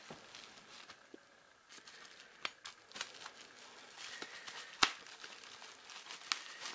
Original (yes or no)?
yes